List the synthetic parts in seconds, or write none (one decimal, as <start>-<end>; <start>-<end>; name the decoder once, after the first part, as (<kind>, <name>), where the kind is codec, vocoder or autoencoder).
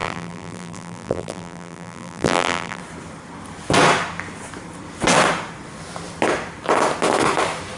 0.0-2.8 (vocoder, BigVGAN v2)